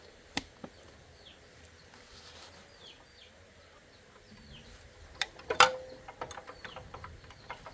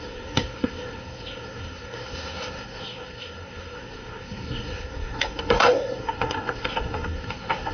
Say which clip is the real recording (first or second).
first